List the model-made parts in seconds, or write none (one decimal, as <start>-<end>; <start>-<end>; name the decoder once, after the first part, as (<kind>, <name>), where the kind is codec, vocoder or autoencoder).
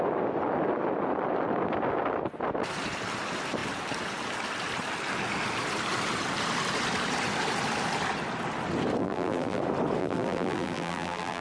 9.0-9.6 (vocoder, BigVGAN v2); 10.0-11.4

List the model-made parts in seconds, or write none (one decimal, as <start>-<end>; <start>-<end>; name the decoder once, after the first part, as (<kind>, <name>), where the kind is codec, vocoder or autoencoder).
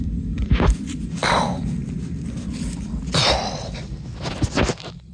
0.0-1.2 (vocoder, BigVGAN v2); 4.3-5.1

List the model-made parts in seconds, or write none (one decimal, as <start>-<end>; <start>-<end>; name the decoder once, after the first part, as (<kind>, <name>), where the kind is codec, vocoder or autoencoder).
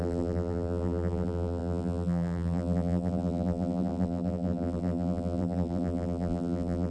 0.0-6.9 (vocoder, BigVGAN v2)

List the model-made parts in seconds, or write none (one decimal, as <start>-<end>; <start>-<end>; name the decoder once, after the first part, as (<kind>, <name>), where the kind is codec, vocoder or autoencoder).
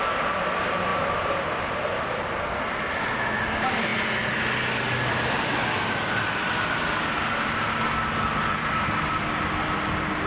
none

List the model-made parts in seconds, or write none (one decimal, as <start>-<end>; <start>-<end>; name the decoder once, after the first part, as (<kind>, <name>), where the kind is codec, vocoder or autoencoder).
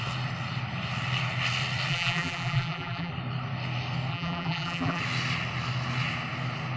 1.9-3.1 (vocoder, BigVGAN v2); 4.1-5.0